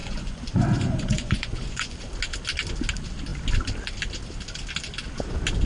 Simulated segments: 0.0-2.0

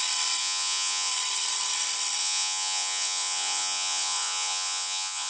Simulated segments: 0.4-1.1; 2.2-5.3

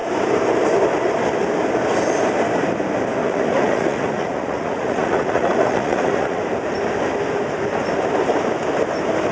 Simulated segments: 3.2-6.4

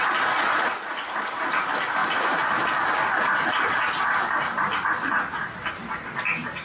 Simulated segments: none

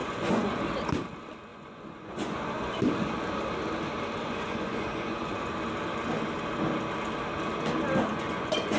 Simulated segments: 0.0-0.6; 1.5-2.7; 4.2-5.5; 8.1-8.8

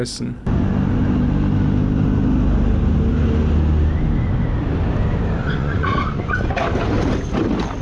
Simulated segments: 5.4-6.5